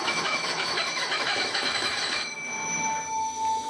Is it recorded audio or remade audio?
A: remade